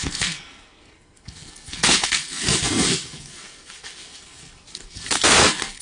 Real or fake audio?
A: fake